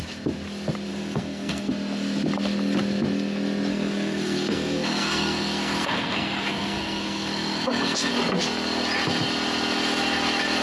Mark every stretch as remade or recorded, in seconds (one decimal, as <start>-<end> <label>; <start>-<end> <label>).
0.0-0.9 recorded; 0.9-1.7 remade; 1.7-3.7 recorded; 3.7-8.1 remade; 8.1-10.6 recorded